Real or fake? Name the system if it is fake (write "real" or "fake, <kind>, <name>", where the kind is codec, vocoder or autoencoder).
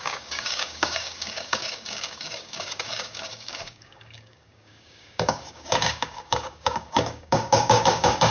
fake, codec, DAC